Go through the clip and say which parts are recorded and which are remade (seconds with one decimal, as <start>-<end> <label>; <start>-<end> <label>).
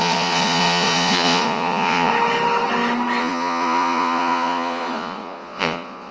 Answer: 0.0-2.1 remade; 2.1-3.2 recorded; 3.2-6.1 remade